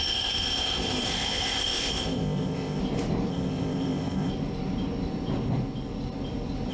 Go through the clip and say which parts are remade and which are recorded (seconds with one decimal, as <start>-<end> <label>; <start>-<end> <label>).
0.0-2.8 remade; 2.8-3.3 recorded; 3.3-4.3 remade; 4.3-6.7 recorded